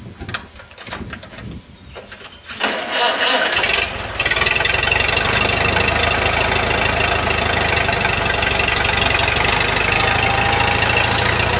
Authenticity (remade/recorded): recorded